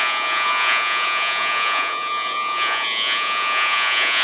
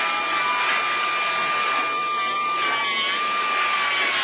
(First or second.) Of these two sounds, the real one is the second